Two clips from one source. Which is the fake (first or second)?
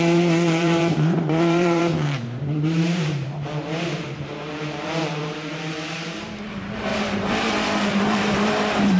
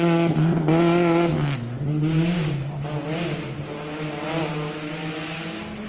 first